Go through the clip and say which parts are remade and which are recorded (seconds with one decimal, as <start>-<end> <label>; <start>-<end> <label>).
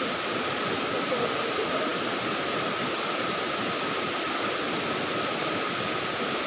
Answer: 0.0-1.9 remade; 1.9-5.2 recorded; 5.2-6.5 remade